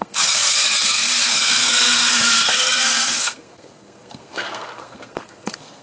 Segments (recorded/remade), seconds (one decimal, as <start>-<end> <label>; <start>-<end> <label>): 0.0-5.8 remade